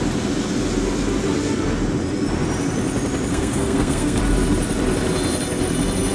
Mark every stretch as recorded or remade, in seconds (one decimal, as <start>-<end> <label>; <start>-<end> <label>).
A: 0.0-3.3 recorded; 3.3-4.2 remade; 4.2-6.1 recorded